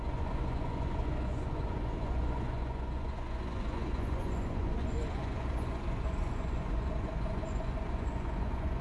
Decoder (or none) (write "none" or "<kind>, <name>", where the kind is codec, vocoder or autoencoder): vocoder, Vocos